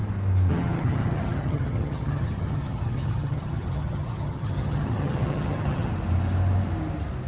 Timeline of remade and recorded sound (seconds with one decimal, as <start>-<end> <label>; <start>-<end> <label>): 0.0-0.5 recorded; 0.5-5.9 remade; 5.9-7.3 recorded